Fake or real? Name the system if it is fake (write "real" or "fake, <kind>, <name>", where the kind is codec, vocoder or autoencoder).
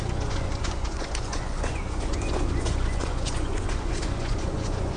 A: fake, vocoder, Vocos